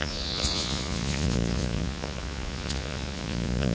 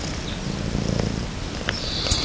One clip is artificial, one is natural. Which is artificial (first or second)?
first